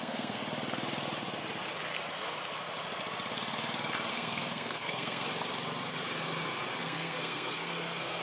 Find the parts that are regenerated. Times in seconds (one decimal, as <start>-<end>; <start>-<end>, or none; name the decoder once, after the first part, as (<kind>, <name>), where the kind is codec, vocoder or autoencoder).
0.0-0.4 (codec, SNAC); 4.1-5.3; 6.8-8.2